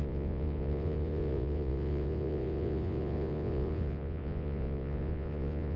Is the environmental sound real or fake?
fake